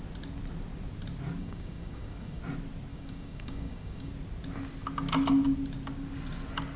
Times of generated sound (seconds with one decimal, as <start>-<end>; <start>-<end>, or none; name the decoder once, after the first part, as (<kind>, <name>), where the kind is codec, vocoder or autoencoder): 1.4-2.4 (codec, DAC); 2.9-4.1